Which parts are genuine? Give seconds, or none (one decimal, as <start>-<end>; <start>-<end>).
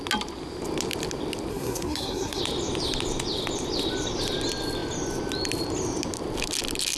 0.0-1.5; 2.4-7.0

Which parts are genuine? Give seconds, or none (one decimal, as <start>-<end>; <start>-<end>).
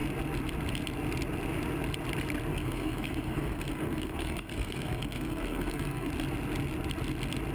0.0-2.5; 6.1-7.5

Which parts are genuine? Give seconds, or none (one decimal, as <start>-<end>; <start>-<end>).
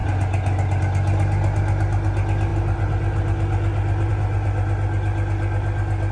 0.0-6.1